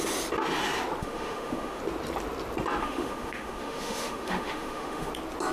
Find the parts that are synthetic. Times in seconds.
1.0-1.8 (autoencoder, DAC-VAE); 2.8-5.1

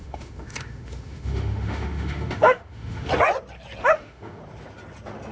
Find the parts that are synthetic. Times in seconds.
0.0-3.1 (autoencoder, DAC-VAE); 3.8-4.4